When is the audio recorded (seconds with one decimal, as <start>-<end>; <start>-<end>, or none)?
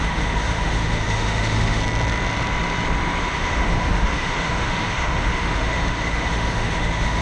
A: 1.8-3.2